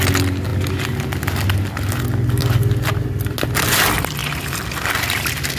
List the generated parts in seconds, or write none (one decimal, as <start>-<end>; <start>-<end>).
none